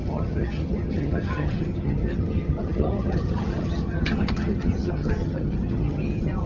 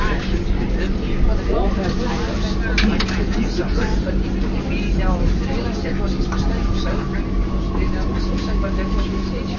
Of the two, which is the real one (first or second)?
second